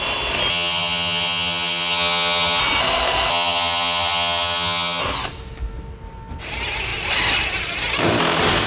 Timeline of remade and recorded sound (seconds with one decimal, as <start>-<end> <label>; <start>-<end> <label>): 0.0-0.5 recorded; 0.5-2.6 remade; 2.6-3.3 recorded; 3.3-5.0 remade; 5.0-8.7 recorded